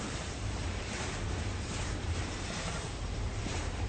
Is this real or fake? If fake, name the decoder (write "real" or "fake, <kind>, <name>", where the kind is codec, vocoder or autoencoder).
fake, vocoder, BigVGAN v2